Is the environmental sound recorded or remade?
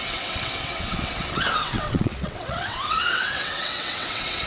remade